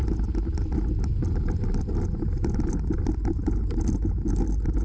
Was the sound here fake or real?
real